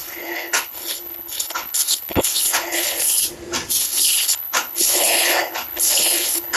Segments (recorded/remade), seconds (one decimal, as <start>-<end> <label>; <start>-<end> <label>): 0.0-3.2 remade; 3.2-3.8 recorded; 3.8-6.6 remade